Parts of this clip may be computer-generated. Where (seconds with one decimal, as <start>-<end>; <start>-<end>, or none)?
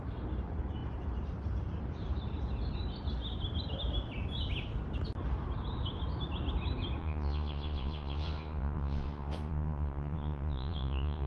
7.0-11.3